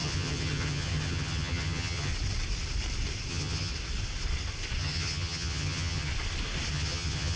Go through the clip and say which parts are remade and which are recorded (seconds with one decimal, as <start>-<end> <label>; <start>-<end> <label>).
0.0-2.1 remade; 2.1-3.3 recorded; 3.3-3.7 remade; 3.7-4.8 recorded; 4.8-6.1 remade; 6.1-6.7 recorded; 6.7-7.4 remade